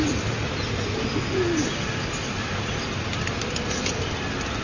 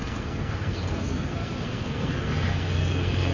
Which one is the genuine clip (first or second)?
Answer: first